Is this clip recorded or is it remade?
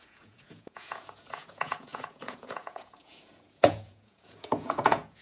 remade